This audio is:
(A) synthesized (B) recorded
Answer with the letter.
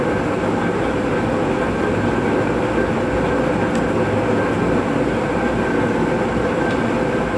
B